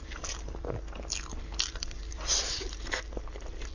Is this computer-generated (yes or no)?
no